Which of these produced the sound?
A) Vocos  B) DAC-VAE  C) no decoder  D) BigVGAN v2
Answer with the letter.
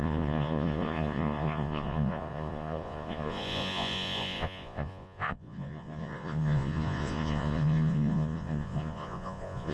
A